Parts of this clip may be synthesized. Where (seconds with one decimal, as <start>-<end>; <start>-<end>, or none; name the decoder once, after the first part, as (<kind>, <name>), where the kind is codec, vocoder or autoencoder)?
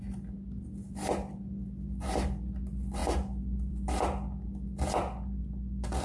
none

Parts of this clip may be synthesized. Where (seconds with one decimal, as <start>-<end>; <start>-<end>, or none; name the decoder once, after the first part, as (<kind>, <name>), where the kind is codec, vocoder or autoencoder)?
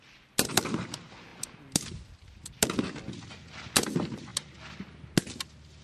none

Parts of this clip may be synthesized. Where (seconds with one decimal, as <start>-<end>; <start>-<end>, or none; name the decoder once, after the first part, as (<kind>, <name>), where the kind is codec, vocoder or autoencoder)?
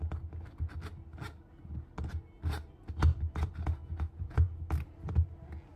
3.8-4.7 (vocoder, Vocos)